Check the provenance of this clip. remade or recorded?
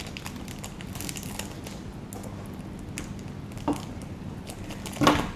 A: recorded